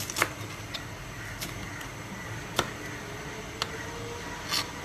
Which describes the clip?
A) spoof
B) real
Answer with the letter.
B